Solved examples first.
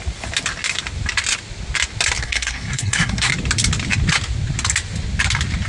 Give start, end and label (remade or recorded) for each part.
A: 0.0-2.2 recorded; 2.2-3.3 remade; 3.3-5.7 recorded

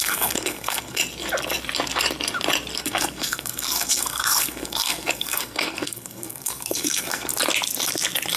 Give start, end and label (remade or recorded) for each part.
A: 0.0-1.0 remade; 1.0-2.8 recorded; 2.8-7.3 remade; 7.3-8.4 recorded